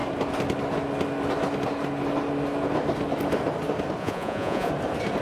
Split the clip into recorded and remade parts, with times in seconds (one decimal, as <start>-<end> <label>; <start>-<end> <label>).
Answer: 0.0-4.0 recorded; 4.0-4.7 remade; 4.7-5.2 recorded